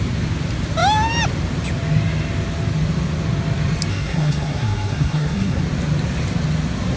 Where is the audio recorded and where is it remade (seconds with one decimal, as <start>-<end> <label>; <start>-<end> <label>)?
0.0-3.9 recorded; 3.9-5.6 remade; 5.6-7.0 recorded